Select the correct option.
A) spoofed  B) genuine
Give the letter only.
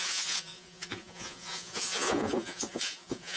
A